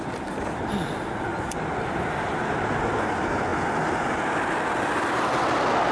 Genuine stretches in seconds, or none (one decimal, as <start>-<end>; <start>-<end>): 0.0-5.9